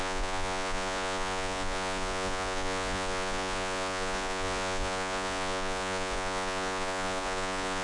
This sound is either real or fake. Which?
fake